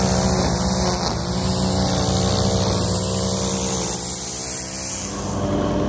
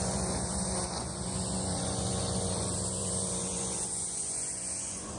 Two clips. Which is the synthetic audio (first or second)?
second